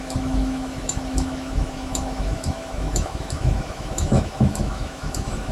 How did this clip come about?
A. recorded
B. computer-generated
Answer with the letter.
B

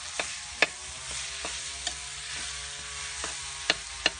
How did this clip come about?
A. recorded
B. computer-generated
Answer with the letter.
A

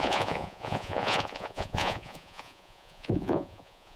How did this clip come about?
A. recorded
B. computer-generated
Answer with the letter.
B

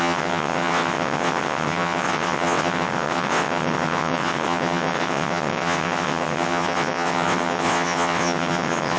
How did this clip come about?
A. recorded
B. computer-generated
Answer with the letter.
B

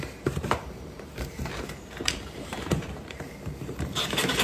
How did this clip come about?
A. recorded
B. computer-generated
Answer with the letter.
B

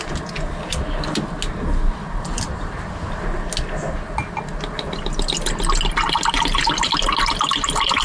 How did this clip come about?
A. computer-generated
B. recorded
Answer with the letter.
B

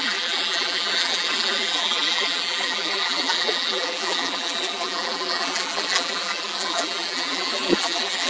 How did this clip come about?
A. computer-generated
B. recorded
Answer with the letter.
A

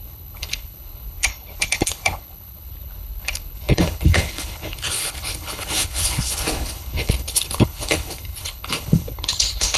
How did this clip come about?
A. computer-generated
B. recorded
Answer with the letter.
A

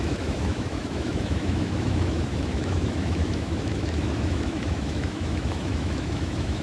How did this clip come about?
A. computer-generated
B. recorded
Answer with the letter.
A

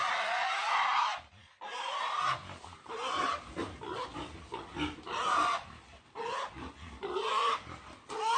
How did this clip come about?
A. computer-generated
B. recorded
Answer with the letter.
B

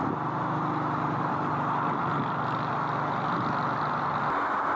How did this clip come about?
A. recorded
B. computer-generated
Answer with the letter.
A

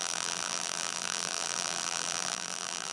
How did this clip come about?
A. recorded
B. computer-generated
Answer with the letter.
B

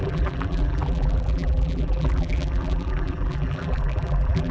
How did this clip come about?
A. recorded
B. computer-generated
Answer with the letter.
B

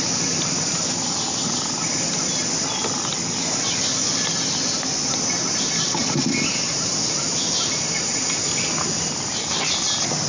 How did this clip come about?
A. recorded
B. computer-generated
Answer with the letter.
A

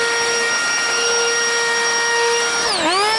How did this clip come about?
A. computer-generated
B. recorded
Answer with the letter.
B